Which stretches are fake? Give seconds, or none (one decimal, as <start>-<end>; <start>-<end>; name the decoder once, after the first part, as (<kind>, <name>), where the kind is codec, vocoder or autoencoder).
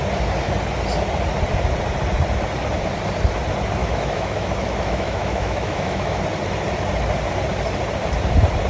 3.8-6.2 (autoencoder, DAC-VAE)